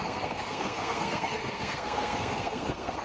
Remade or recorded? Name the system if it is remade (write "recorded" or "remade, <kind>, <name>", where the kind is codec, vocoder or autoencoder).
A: remade, codec, SNAC